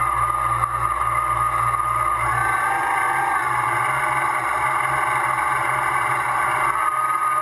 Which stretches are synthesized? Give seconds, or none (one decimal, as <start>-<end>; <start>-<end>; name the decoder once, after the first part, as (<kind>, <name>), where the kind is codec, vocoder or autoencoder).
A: none